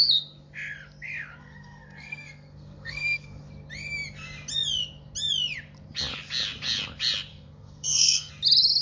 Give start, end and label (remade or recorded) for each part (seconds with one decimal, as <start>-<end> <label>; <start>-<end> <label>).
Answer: 0.0-1.4 recorded; 1.4-3.4 remade; 3.4-7.3 recorded; 7.3-8.3 remade; 8.3-8.8 recorded